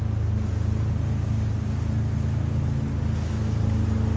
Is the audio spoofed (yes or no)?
no